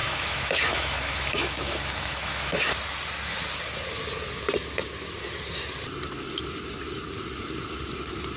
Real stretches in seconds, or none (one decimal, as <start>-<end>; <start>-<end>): 2.7-8.4